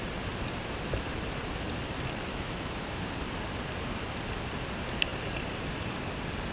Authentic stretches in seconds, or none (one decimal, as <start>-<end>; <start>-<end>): 0.0-2.3; 3.1-6.5